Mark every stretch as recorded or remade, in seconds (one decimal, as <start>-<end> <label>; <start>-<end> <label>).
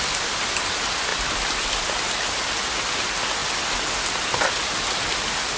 0.0-5.6 recorded